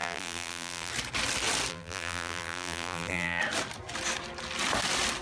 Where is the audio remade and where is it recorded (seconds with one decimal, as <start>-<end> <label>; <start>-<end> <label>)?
0.0-0.9 remade; 0.9-1.7 recorded; 1.7-3.4 remade; 3.4-5.2 recorded